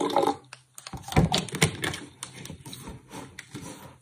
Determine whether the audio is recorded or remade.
recorded